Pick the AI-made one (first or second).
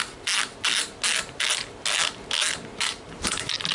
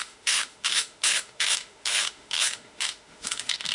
second